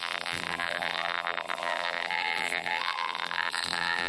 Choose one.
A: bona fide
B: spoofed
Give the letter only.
B